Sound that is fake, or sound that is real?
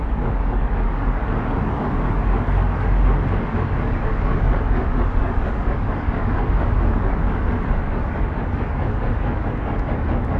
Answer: fake